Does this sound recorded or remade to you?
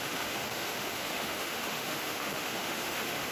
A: remade